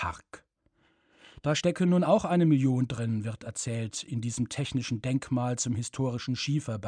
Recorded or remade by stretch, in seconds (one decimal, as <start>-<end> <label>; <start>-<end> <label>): 0.0-0.8 recorded; 0.8-1.6 remade; 1.6-6.9 recorded